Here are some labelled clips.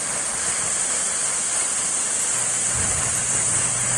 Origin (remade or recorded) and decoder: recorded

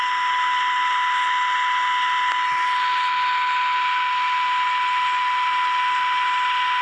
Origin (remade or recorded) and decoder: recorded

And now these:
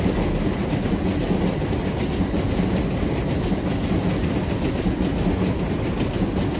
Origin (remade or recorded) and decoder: recorded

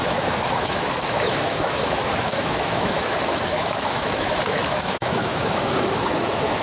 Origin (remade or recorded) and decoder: remade, autoencoder, DAC-VAE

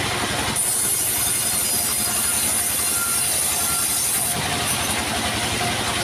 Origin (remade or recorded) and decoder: recorded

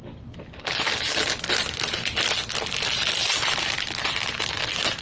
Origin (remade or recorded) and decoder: recorded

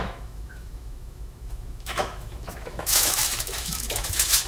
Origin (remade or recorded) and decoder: remade, autoencoder, DAC-VAE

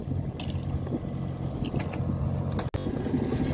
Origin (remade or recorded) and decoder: recorded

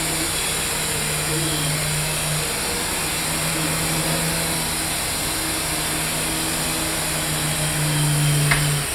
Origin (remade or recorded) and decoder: recorded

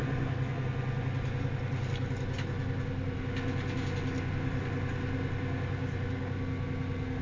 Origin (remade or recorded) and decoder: recorded